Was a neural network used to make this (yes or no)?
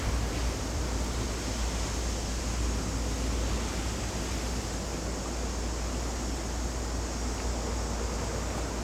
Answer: no